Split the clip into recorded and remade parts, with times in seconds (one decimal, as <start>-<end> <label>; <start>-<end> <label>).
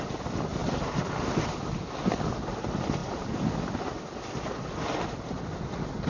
0.0-6.1 recorded